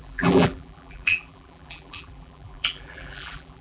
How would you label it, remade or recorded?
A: remade